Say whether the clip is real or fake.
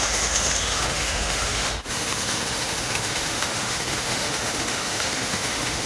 fake